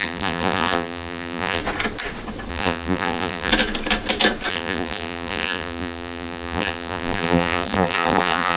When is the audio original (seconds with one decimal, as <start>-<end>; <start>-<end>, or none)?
1.6-2.5; 3.5-4.5

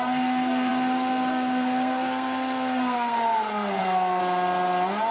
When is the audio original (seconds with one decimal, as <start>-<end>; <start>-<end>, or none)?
4.2-5.1

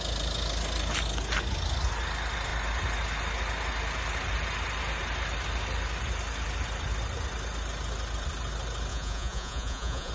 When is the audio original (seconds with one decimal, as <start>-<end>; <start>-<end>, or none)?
0.0-8.9

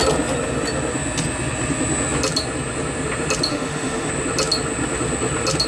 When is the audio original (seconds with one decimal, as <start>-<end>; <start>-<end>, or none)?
0.0-3.5; 4.1-5.7

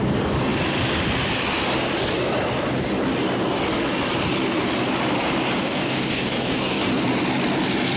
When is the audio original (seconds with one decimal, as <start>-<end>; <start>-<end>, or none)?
0.0-5.6; 6.8-8.0

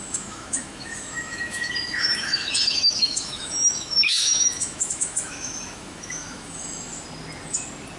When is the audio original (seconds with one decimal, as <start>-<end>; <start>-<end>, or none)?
6.9-8.0

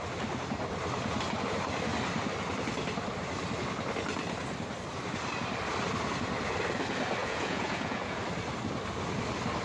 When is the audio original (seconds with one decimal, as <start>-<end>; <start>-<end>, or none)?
0.0-7.2; 8.2-9.6

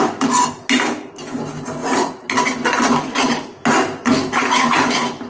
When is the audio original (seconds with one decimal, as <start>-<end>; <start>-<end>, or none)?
0.0-5.3